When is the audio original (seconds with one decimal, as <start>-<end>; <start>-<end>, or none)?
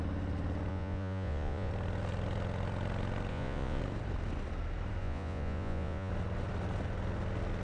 0.0-0.7; 1.7-3.3; 3.8-5.0; 6.1-7.6